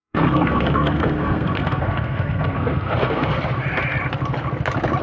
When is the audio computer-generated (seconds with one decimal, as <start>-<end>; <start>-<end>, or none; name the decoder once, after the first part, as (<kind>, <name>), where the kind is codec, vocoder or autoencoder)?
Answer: 0.0-3.3 (codec, SNAC)